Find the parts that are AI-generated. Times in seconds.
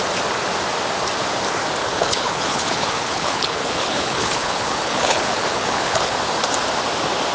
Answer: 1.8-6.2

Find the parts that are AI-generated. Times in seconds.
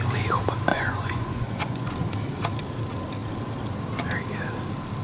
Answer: 0.7-1.9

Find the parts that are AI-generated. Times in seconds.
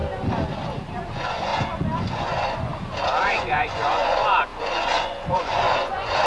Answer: 1.1-1.5; 2.1-2.7; 3.2-6.3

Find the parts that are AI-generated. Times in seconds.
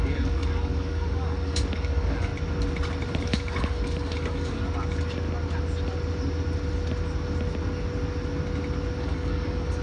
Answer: 0.0-2.3; 3.2-4.6; 9.0-9.8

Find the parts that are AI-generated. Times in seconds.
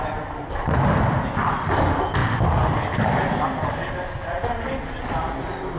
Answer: none